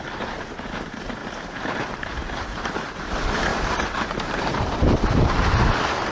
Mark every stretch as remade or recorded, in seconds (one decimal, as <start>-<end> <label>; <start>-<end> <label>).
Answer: 0.0-6.1 remade